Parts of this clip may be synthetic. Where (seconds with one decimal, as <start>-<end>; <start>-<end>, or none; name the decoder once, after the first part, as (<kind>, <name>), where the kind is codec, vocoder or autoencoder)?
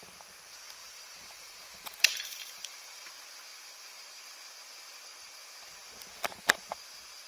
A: 0.8-3.1 (vocoder, BigVGAN v2); 3.5-4.2